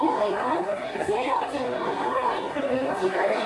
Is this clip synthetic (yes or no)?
yes